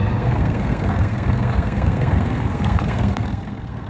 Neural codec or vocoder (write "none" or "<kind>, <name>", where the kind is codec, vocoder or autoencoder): codec, SNAC